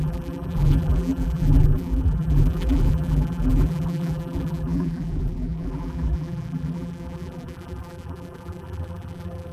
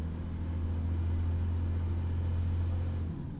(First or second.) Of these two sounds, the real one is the second